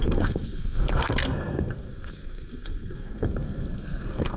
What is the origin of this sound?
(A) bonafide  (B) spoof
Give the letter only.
B